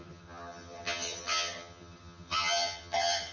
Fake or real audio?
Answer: fake